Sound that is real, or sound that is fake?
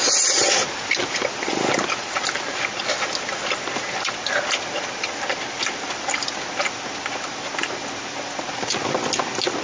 real